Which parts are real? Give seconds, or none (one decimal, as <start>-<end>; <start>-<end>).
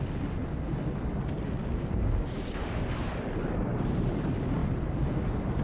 0.0-1.6; 2.8-5.6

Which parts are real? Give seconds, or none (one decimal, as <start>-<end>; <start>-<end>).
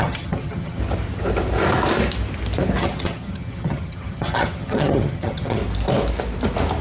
0.8-2.8; 5.6-6.8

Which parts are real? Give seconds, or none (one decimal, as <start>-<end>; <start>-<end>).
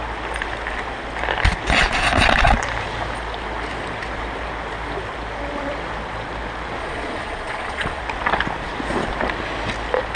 0.0-6.8; 8.0-10.2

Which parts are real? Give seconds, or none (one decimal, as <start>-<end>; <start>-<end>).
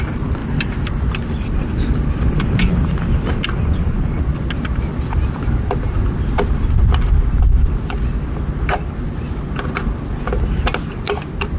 0.0-11.6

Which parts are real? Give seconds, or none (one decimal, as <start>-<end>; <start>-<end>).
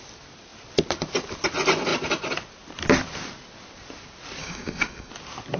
0.0-4.4; 5.1-5.6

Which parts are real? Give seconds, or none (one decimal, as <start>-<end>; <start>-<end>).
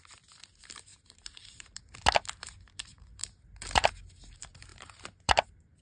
0.0-0.9; 1.8-2.9; 3.9-4.7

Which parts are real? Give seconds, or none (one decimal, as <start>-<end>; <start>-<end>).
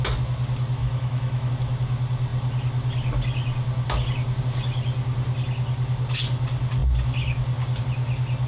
0.0-0.8; 1.5-8.5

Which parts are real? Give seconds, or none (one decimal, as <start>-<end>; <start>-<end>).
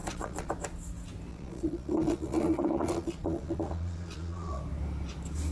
0.5-1.3; 4.6-5.5